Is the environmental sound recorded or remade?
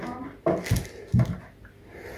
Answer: recorded